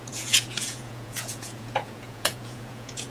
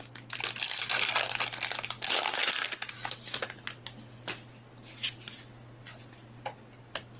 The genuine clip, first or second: second